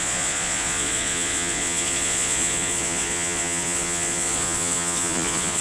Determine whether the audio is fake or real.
fake